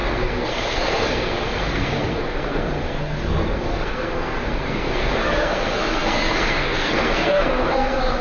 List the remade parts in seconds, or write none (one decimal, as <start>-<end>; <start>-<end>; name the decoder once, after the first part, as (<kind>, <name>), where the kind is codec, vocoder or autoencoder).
0.0-8.2 (codec, SNAC)